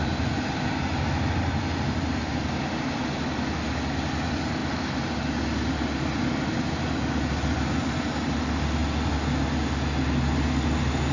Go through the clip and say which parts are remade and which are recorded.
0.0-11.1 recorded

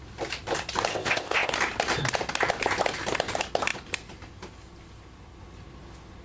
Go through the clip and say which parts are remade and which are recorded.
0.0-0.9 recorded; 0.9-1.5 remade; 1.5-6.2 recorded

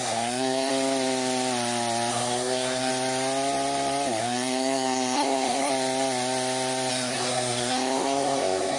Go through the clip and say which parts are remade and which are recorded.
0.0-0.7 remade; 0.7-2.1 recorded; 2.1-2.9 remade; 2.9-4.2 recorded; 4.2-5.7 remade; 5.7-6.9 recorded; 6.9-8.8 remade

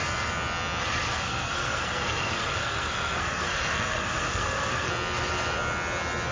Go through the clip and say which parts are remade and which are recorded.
0.0-1.1 recorded; 1.1-4.9 remade; 4.9-6.3 recorded

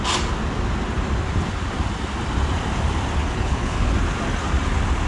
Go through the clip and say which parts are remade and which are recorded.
0.0-3.2 recorded; 3.2-3.9 remade; 3.9-5.1 recorded

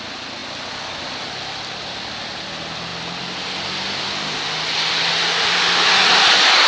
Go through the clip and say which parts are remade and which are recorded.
0.0-6.7 recorded